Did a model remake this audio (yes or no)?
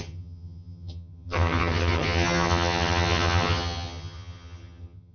yes